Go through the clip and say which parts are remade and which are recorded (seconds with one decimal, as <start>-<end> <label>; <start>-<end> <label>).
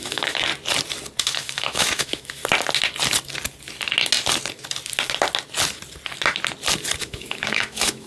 0.0-0.5 remade; 0.5-1.2 recorded; 1.2-2.4 remade; 2.4-7.0 recorded; 7.0-8.1 remade